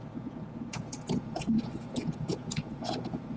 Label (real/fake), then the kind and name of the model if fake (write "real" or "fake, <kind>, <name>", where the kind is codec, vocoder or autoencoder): fake, vocoder, Vocos